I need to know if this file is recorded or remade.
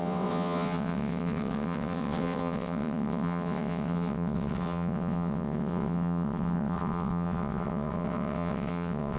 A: remade